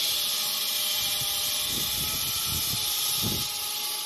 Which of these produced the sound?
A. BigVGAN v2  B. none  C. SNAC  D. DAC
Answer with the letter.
B